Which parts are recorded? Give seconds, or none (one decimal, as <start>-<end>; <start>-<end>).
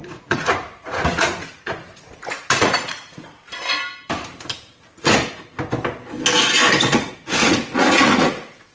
3.8-6.8